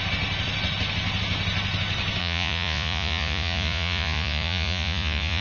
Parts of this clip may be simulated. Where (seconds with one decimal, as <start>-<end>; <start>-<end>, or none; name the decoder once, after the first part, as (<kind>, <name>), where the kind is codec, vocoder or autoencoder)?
2.2-5.4 (vocoder, Vocos)